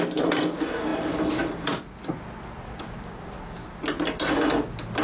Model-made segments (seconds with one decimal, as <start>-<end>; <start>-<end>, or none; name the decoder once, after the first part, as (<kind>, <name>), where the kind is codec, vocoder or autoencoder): none